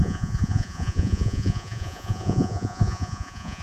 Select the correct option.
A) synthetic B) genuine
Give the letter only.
A